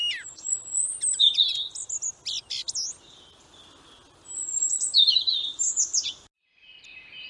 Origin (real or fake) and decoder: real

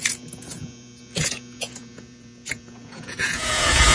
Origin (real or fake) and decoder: fake, vocoder, Vocos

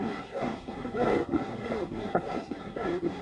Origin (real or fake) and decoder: fake, codec, SNAC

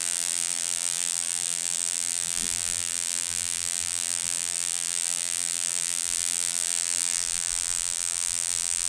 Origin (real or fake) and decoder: fake, vocoder, BigVGAN v2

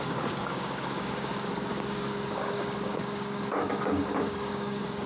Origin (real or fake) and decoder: fake, codec, DAC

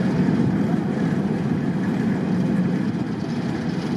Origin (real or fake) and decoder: real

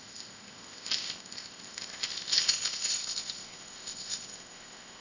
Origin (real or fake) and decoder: fake, codec, ZipCodec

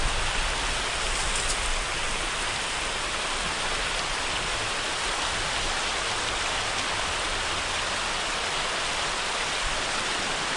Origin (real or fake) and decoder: real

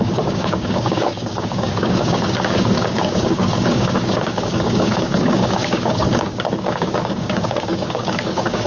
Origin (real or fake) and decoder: fake, codec, DAC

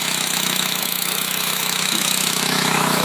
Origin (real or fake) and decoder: fake, autoencoder, DAC-VAE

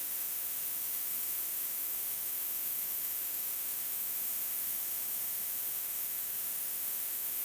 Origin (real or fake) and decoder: fake, autoencoder, DAC-VAE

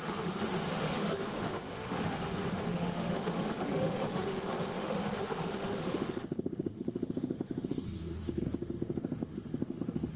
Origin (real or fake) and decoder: fake, autoencoder, DAC-VAE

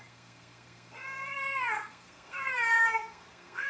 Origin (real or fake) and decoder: fake, codec, SNAC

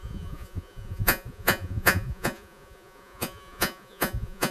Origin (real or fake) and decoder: fake, vocoder, Vocos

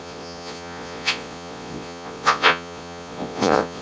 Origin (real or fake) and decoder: fake, vocoder, Vocos